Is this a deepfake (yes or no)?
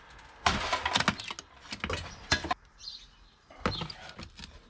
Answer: no